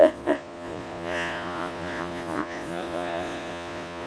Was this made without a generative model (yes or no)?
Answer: no